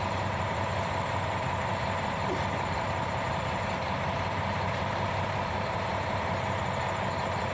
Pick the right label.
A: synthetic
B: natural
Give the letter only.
B